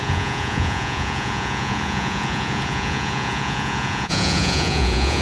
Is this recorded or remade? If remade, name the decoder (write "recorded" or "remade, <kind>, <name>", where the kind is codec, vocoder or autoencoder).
remade, vocoder, Vocos